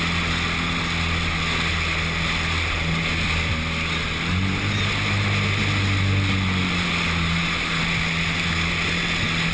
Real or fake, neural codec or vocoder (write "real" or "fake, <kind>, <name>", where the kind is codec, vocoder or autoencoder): real